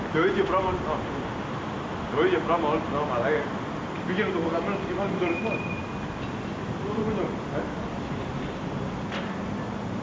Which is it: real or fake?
real